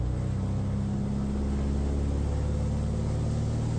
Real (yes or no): yes